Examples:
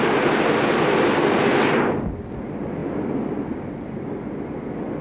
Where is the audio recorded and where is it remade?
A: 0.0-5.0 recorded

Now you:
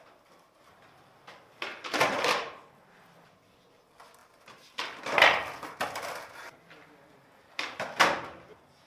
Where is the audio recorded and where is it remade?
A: 0.0-1.7 recorded; 1.7-2.8 remade; 2.8-8.9 recorded

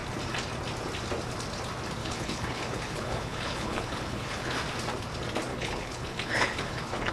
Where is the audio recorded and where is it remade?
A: 0.0-2.0 recorded; 2.0-4.5 remade; 4.5-5.5 recorded; 5.5-7.1 remade

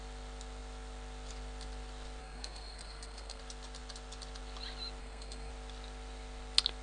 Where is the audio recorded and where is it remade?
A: 0.0-2.2 recorded; 2.2-3.4 remade; 3.4-5.0 recorded; 5.0-5.5 remade; 5.5-6.8 recorded

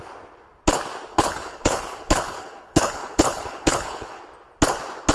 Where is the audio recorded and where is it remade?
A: 0.0-1.1 recorded; 1.1-4.2 remade; 4.2-5.1 recorded

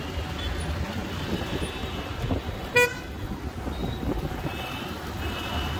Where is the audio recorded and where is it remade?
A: 0.0-3.8 recorded; 3.8-5.8 remade